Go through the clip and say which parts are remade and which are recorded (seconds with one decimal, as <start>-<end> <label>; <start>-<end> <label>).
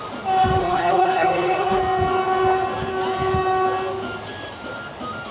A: 0.0-0.6 recorded; 0.6-1.8 remade; 1.8-5.3 recorded